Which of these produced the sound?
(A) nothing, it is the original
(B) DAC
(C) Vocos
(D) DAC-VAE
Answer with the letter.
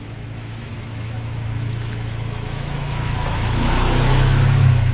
D